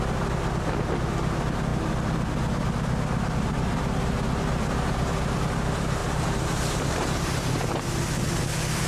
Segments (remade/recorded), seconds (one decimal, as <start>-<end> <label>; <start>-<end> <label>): 0.0-6.0 recorded; 6.0-7.5 remade; 7.5-8.9 recorded